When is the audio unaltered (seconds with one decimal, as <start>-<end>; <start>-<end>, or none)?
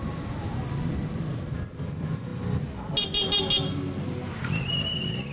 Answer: 0.0-5.3